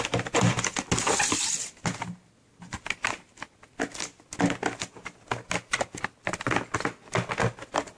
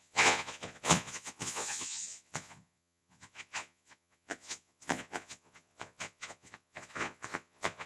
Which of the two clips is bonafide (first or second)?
first